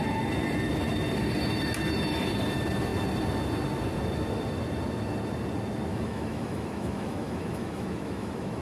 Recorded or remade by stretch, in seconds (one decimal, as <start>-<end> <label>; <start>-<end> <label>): 0.0-5.9 recorded; 5.9-8.6 remade